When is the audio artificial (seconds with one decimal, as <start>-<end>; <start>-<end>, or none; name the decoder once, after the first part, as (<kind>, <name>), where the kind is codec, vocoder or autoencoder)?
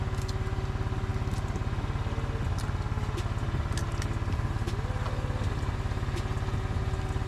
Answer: none